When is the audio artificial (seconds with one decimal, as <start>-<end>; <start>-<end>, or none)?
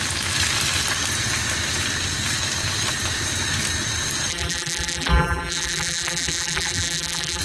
4.3-7.4